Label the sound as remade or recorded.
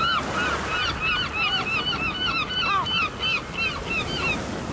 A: recorded